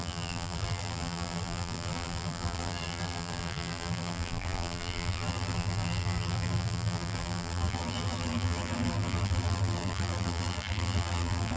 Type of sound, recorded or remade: remade